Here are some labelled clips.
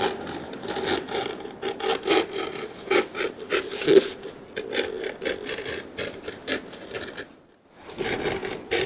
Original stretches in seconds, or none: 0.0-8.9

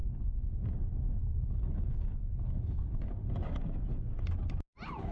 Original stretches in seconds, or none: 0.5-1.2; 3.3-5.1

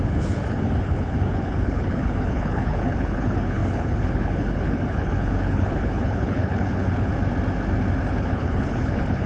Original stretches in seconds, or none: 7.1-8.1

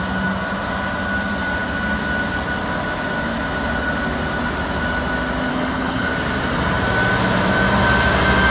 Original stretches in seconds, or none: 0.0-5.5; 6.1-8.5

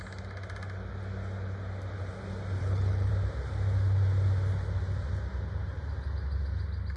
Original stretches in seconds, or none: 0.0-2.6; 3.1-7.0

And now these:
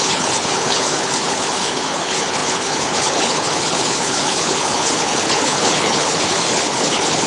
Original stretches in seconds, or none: none

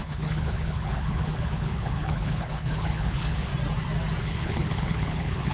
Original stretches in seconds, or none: 3.5-4.2